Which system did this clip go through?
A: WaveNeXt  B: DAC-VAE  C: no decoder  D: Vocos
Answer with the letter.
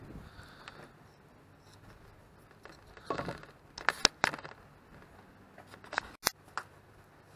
C